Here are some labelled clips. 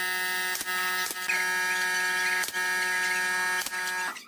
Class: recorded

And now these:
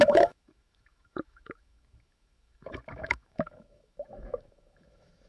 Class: remade